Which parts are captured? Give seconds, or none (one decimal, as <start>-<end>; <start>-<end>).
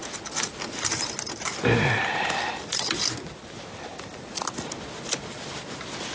0.0-6.1